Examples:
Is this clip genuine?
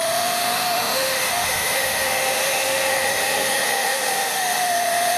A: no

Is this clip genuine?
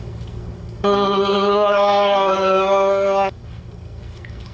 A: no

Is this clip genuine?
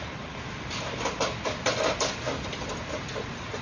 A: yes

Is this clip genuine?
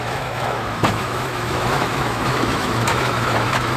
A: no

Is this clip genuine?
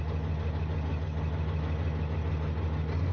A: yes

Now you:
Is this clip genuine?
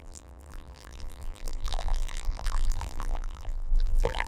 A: no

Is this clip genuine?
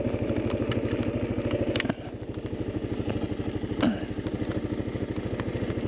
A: yes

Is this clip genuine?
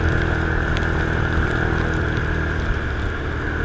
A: yes